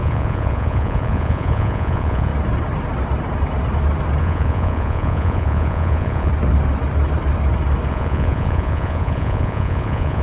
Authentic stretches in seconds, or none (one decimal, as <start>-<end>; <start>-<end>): 2.3-4.2; 6.3-7.9